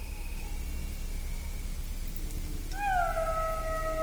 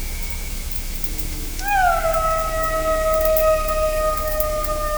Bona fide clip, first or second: first